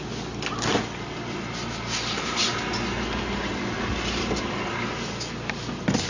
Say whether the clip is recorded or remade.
recorded